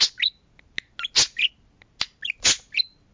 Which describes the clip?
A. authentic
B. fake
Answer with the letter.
A